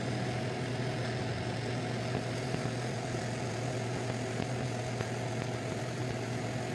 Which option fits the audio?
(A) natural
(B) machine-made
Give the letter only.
A